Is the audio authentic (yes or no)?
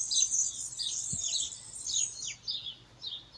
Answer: yes